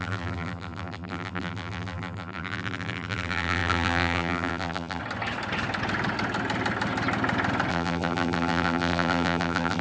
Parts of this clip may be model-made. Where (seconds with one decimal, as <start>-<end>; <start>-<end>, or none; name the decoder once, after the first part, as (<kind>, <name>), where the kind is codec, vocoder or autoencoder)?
0.0-5.0 (vocoder, BigVGAN v2); 7.7-9.8